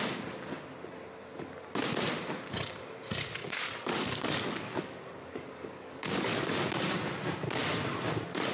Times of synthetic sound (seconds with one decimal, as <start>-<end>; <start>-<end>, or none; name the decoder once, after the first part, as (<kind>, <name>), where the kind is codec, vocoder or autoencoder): 3.3-6.7 (codec, DAC)